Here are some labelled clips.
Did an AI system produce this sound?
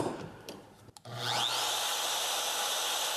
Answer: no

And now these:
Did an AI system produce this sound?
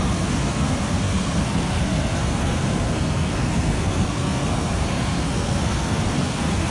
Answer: yes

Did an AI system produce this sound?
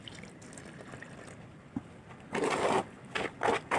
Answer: no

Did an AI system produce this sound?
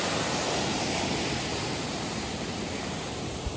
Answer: no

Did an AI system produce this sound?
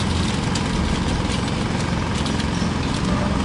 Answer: no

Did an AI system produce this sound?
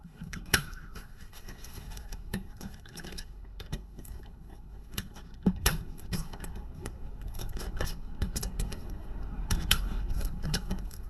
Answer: yes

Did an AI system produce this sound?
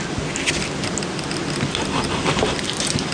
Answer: no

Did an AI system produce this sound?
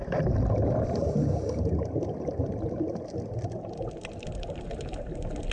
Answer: no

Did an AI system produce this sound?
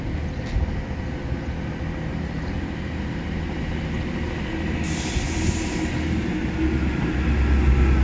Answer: no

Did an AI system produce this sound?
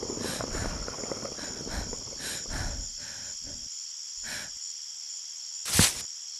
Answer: no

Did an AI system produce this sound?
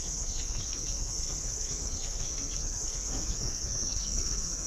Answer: yes